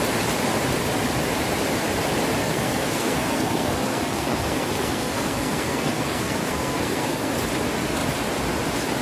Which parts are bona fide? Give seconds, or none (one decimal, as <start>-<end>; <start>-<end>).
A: 0.0-2.4; 7.3-9.0

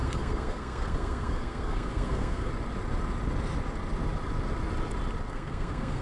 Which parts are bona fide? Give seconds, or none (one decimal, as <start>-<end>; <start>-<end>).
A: 2.5-5.3

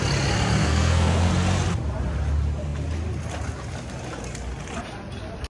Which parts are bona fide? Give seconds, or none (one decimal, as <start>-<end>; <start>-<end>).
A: 0.0-0.6; 1.3-5.5

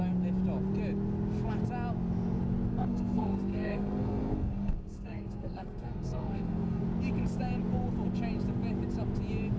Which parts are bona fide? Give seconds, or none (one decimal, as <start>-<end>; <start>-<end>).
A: 0.0-2.7; 6.8-9.6

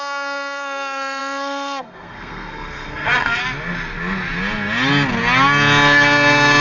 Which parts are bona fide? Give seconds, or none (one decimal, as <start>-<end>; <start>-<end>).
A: 3.4-6.6

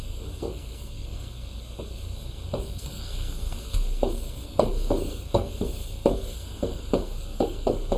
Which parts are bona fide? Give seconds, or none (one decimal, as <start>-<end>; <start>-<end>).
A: none

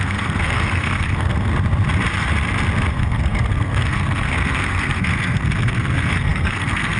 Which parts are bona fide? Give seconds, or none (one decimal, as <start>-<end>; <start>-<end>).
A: 1.5-2.9